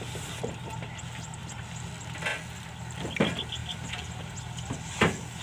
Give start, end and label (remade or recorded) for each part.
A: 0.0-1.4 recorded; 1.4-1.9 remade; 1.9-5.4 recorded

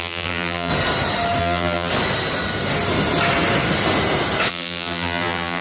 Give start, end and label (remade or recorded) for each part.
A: 0.0-0.7 remade; 0.7-1.4 recorded; 1.4-1.9 remade; 1.9-4.5 recorded; 4.5-5.6 remade

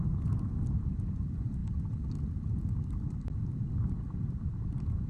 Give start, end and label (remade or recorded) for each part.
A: 0.0-1.6 remade; 1.6-5.1 recorded

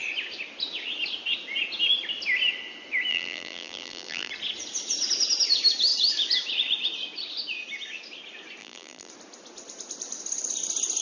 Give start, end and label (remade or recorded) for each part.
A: 0.0-3.1 recorded; 3.1-4.3 remade; 4.3-8.6 recorded; 8.6-9.1 remade; 9.1-11.0 recorded